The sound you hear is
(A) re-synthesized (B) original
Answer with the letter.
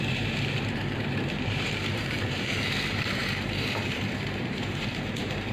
A